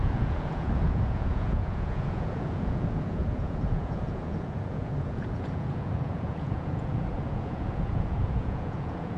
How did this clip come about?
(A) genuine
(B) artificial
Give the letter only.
B